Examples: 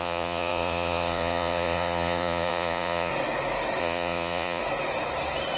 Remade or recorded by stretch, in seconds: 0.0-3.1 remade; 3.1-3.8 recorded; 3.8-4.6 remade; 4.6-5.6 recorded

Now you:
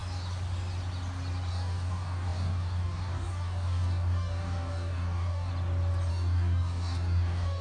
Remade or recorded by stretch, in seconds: 0.0-1.5 recorded; 1.5-5.5 remade; 5.5-6.1 recorded; 6.1-7.6 remade

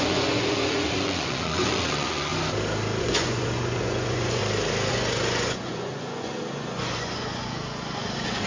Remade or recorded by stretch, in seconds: 0.0-2.3 remade; 2.3-3.0 recorded; 3.0-4.4 remade; 4.4-4.9 recorded; 4.9-8.5 remade

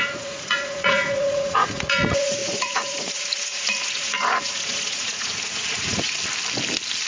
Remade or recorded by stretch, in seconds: 0.0-6.2 remade; 6.2-7.1 recorded

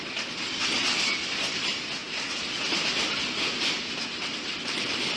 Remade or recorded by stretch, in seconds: 0.0-5.2 recorded

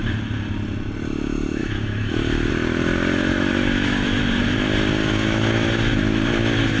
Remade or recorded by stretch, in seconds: 0.0-1.6 recorded; 1.6-2.5 remade; 2.5-3.3 recorded; 3.3-4.2 remade; 4.2-5.0 recorded; 5.0-5.7 remade; 5.7-6.8 recorded